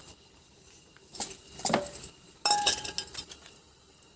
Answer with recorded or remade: recorded